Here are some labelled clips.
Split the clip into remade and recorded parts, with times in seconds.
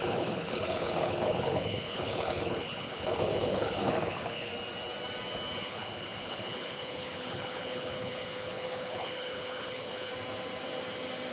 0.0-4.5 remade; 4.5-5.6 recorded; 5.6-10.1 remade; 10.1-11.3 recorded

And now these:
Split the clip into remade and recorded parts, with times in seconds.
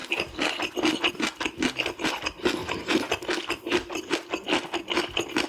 0.0-2.6 recorded; 2.6-3.1 remade; 3.1-5.5 recorded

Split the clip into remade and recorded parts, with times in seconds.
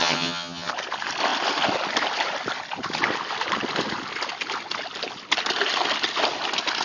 0.0-0.7 remade; 0.7-6.8 recorded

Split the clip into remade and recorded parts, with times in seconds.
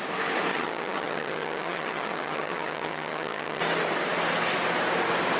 0.0-0.5 recorded; 0.5-3.6 remade; 3.6-5.4 recorded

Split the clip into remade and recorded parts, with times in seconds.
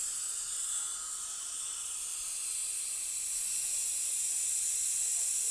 0.0-5.5 recorded